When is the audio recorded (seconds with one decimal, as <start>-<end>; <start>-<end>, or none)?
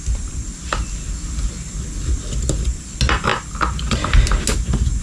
0.0-5.0